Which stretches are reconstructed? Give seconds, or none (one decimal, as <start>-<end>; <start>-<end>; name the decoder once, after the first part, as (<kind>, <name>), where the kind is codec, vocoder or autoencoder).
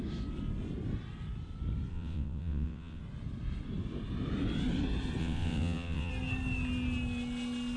1.9-3.0 (vocoder, WaveNeXt); 5.2-6.1